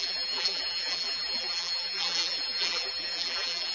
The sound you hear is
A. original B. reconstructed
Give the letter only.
B